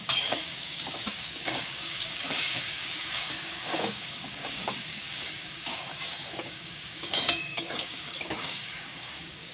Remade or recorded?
remade